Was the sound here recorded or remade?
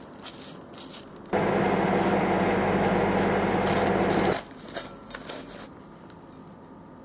recorded